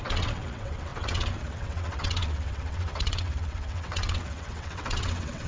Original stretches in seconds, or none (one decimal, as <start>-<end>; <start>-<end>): none